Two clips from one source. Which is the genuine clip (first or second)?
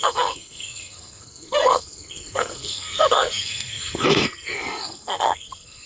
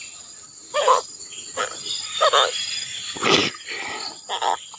second